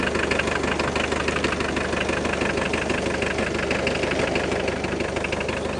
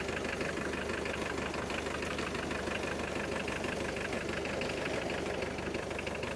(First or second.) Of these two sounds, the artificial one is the second